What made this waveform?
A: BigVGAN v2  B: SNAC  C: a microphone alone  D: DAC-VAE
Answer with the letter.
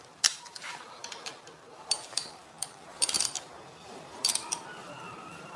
A